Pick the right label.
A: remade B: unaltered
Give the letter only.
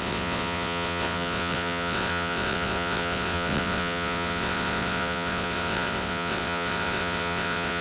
A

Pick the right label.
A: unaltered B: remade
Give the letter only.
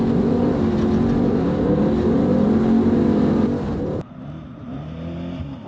A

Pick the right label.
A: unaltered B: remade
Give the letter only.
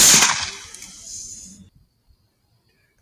A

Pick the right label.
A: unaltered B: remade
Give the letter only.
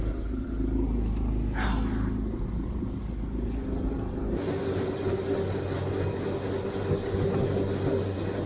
A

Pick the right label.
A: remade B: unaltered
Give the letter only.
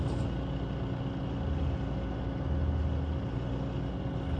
B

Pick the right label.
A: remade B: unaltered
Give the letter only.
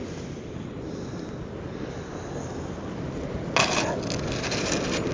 B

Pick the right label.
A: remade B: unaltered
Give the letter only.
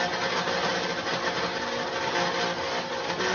B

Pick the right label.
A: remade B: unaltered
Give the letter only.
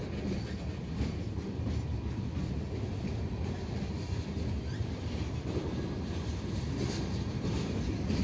B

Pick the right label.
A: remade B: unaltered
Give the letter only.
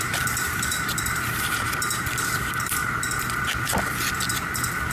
A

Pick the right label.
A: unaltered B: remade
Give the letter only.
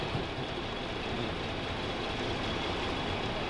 A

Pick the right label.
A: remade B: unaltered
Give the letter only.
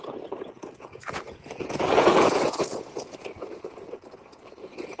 A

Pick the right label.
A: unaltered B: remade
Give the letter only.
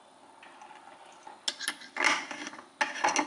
A